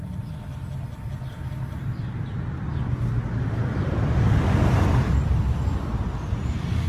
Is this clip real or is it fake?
real